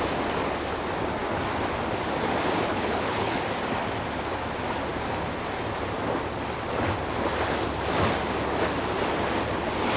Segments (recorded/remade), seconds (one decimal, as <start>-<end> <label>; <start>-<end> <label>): 0.0-2.7 recorded; 2.7-3.4 remade; 3.4-10.0 recorded